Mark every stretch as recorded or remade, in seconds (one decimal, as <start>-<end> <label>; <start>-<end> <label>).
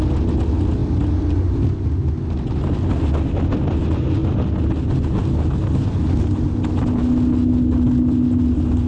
0.0-8.9 recorded